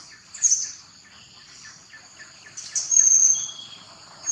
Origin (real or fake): real